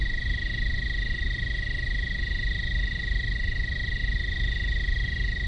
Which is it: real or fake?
real